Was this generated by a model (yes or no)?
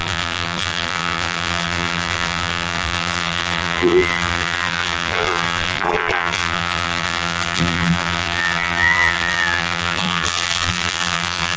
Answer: yes